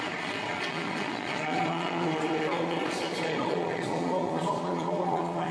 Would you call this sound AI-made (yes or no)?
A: yes